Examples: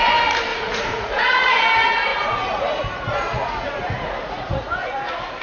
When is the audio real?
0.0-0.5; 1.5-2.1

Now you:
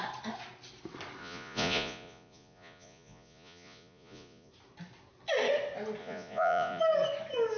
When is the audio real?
0.0-1.2; 4.5-6.0; 6.8-7.6

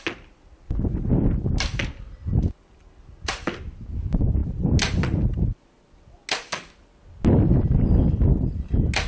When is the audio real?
0.0-9.1

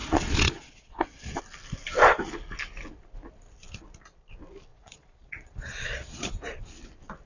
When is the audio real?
1.4-4.7; 6.6-7.3

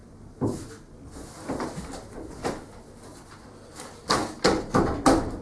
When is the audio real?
0.0-5.4

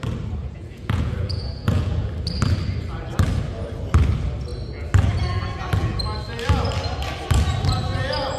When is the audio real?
0.0-0.4; 2.1-8.4